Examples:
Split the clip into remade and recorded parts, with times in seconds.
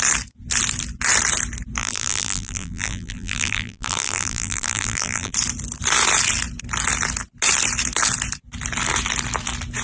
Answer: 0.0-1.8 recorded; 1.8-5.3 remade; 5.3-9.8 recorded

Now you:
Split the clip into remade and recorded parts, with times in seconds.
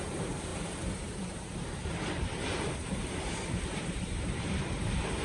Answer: 0.0-5.2 remade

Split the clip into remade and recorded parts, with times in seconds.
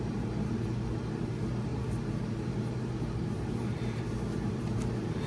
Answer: 0.0-5.3 remade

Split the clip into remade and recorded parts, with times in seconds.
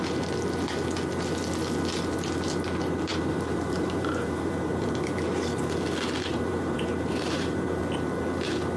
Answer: 0.0-3.1 recorded; 3.1-5.3 remade; 5.3-6.3 recorded; 6.3-7.8 remade; 7.8-8.8 recorded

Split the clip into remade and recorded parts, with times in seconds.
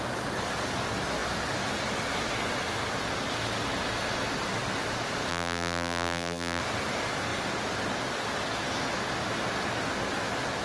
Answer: 0.0-5.3 recorded; 5.3-6.6 remade; 6.6-10.6 recorded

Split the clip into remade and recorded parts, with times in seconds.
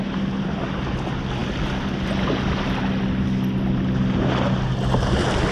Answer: 0.0-5.5 recorded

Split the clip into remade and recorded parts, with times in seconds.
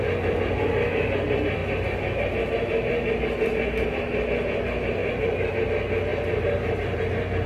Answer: 0.0-5.0 recorded; 5.0-5.5 remade; 5.5-6.1 recorded; 6.1-7.0 remade; 7.0-7.5 recorded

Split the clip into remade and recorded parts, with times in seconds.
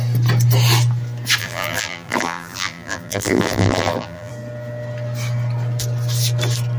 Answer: 0.0-1.4 recorded; 1.4-4.3 remade; 4.3-6.8 recorded